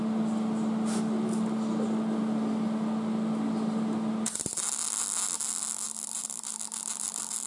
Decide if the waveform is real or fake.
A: real